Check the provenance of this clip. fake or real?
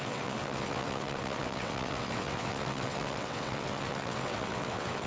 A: fake